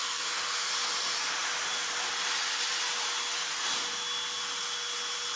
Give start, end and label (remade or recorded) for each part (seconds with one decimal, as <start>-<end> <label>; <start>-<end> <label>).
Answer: 0.0-0.7 remade; 0.7-5.4 recorded